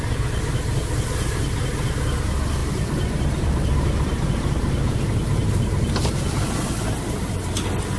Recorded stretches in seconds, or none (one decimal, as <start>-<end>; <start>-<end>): 0.0-2.6; 6.1-8.0